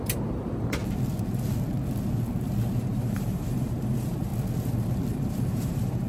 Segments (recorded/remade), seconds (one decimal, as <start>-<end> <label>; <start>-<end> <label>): 0.0-0.8 remade; 0.8-2.8 recorded; 2.8-4.3 remade; 4.3-5.1 recorded; 5.1-6.1 remade